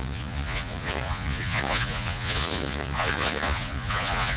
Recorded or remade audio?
remade